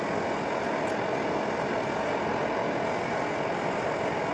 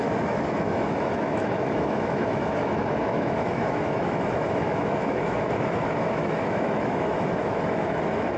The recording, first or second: first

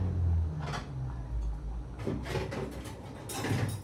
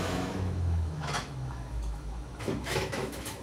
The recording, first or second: first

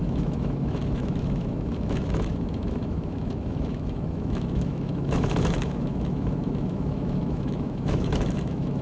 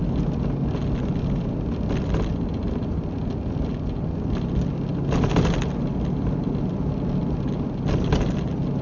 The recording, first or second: second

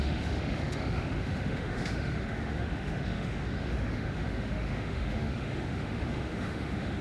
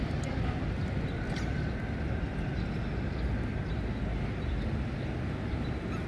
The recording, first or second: second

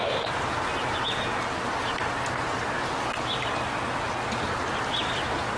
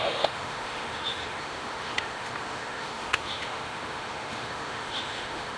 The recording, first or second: first